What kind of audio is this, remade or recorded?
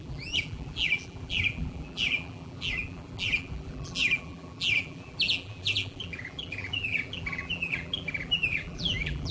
remade